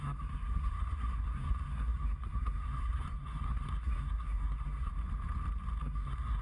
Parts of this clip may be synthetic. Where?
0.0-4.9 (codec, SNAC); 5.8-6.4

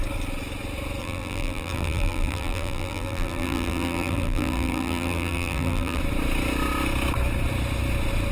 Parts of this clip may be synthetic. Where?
1.0-6.0 (vocoder, BigVGAN v2)